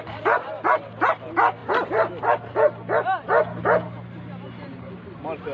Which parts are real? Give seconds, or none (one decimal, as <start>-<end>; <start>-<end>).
0.0-5.5